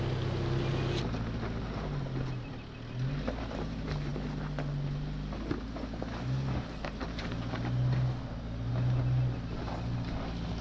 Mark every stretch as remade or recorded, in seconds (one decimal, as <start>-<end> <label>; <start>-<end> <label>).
0.0-10.6 recorded